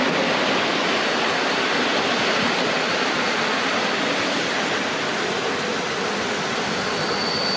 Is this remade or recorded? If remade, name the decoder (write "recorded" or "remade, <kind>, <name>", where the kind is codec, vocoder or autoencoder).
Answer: remade, vocoder, BigVGAN v2